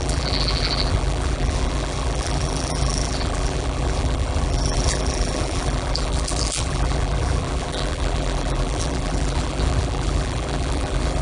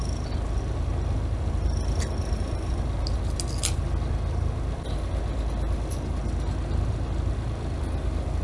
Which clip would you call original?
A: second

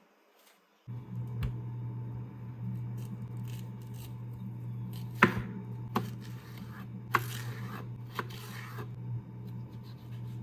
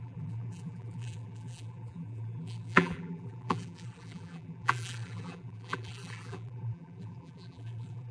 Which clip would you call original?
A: first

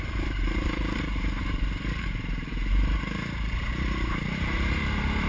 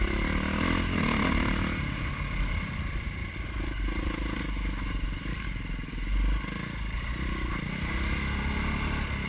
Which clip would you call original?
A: second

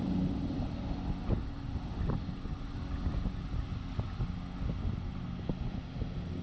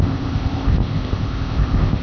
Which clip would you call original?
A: first